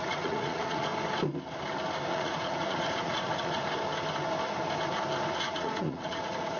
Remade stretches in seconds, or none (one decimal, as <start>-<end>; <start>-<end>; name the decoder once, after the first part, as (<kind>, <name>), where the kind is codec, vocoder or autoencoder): 0.0-0.9 (vocoder, Vocos); 2.1-3.6; 5.3-6.6